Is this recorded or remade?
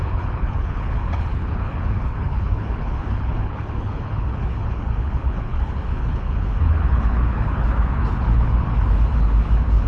remade